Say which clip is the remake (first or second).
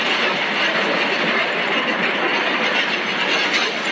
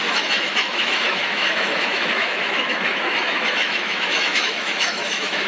second